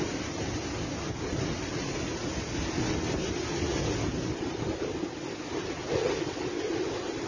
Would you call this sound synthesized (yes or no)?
no